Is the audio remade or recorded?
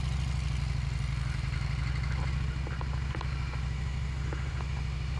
recorded